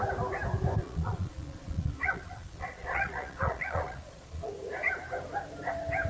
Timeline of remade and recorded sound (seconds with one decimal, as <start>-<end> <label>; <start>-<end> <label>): 0.0-0.8 recorded; 0.8-4.5 remade; 4.5-6.1 recorded